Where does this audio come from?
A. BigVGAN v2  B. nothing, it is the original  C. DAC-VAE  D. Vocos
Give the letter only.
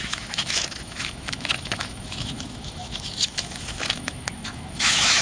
C